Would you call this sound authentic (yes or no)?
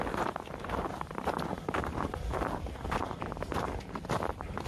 yes